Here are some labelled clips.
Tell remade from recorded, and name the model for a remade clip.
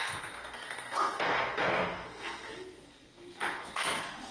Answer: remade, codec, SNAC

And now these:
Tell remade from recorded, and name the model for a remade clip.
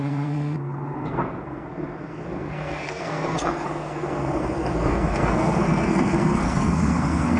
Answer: remade, codec, SNAC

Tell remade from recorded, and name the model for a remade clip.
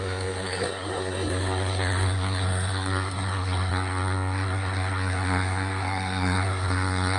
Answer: remade, codec, SNAC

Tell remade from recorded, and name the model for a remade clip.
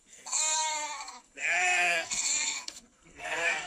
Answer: remade, codec, SNAC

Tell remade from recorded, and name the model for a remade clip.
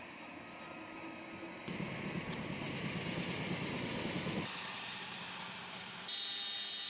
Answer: recorded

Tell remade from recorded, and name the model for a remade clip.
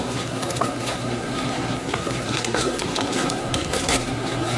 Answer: remade, codec, SNAC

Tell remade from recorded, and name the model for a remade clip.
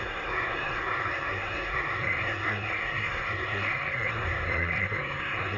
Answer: remade, codec, SNAC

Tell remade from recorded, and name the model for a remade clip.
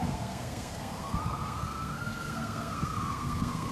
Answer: remade, codec, SNAC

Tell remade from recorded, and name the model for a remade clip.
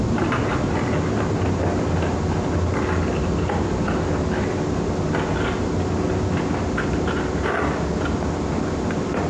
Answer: recorded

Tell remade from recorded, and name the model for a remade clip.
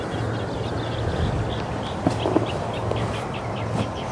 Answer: recorded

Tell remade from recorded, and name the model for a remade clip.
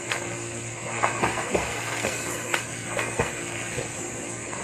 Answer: remade, codec, SNAC